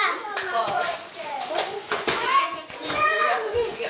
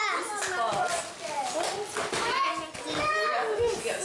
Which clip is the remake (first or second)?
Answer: first